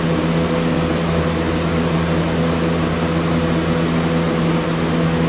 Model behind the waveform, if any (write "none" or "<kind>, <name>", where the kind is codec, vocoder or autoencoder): none